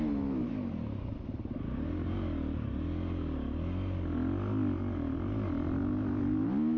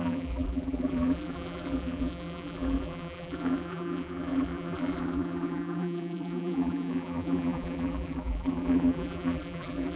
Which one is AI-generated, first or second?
second